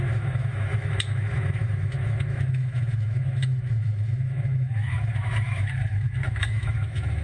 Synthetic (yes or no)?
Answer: yes